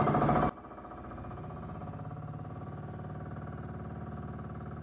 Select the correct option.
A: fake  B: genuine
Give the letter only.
B